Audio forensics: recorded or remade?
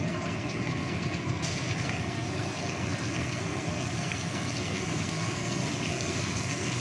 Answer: remade